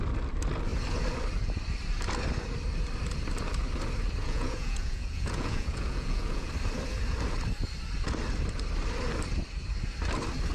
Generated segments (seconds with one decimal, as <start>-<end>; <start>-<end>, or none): 4.2-6.5